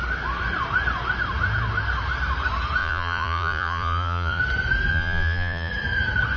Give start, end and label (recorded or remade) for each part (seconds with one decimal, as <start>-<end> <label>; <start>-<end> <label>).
0.0-2.8 recorded; 2.8-4.4 remade; 4.4-4.9 recorded; 4.9-5.7 remade; 5.7-6.4 recorded